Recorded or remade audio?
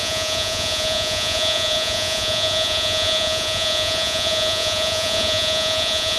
remade